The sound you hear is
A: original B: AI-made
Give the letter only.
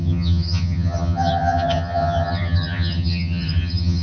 B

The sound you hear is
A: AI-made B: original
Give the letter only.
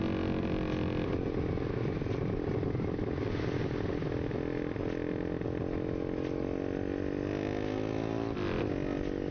B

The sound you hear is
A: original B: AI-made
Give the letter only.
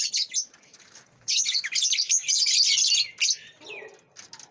A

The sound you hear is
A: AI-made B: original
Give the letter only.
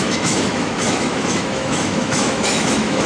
A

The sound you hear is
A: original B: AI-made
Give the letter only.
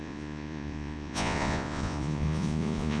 B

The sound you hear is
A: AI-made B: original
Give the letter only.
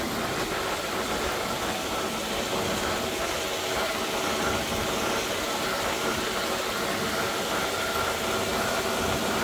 B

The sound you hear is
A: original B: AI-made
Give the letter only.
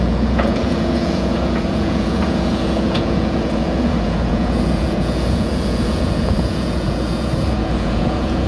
B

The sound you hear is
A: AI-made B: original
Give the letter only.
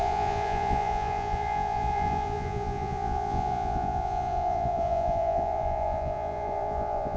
A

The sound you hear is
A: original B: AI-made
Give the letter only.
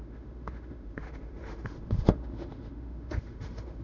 B